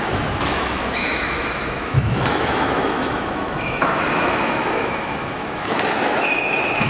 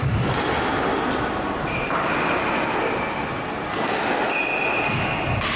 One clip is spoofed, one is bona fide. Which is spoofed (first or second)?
first